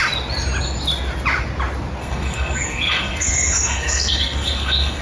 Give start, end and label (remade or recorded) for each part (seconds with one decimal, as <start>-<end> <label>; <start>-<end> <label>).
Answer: 0.0-2.0 recorded; 2.0-5.0 remade